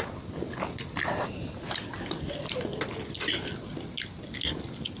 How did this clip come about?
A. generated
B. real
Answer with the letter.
B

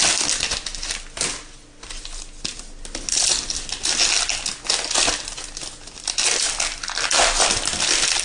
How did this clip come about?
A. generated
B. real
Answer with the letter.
B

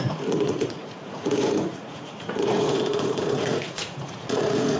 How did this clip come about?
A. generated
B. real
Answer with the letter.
A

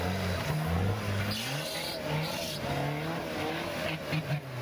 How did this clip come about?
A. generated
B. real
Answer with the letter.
B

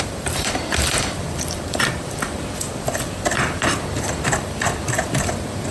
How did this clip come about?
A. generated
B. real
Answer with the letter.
A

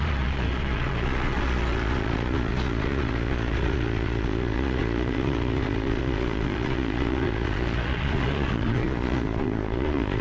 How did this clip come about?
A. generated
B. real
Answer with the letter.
A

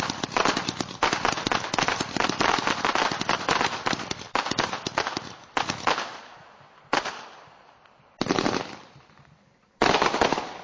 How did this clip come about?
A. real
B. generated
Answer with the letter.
A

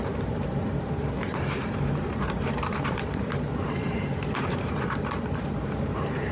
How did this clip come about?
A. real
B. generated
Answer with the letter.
B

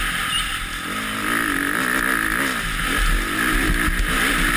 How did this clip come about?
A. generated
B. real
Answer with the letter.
B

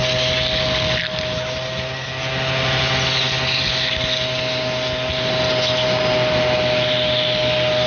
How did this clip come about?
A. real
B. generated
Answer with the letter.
A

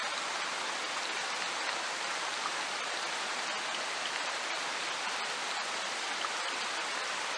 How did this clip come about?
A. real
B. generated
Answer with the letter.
A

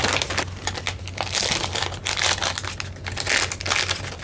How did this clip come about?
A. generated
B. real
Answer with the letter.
B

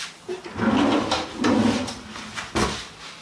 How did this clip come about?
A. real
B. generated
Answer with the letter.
A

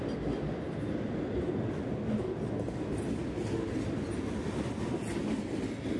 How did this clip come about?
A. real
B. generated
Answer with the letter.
A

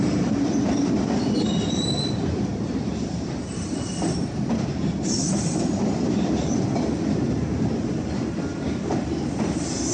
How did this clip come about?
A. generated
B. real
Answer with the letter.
A